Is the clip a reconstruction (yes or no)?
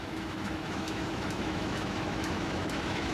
yes